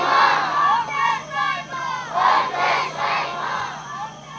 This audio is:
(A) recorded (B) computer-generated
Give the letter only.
B